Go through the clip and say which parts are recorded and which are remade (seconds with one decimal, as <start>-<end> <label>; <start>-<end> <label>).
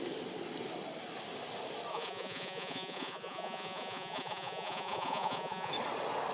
0.0-1.9 recorded; 1.9-5.7 remade; 5.7-6.3 recorded